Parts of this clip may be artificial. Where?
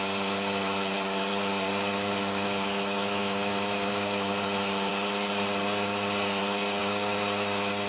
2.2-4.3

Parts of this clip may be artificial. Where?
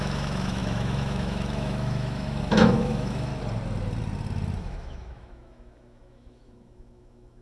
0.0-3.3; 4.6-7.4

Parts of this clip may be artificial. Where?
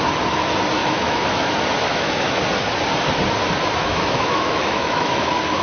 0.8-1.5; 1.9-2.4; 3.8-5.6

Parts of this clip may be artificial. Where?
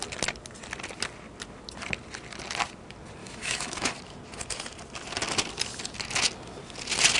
3.2-3.9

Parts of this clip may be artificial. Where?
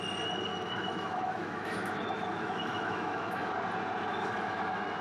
0.5-3.5; 4.1-5.0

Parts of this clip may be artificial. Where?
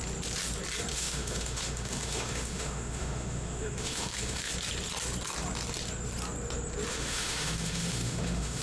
0.9-4.5; 6.9-8.6